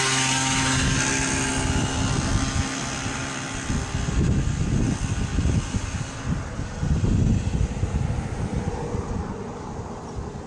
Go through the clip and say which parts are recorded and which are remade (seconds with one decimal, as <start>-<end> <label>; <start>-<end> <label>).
0.0-10.5 recorded